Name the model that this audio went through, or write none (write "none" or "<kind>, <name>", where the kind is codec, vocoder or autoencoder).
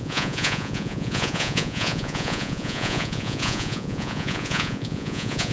vocoder, Vocos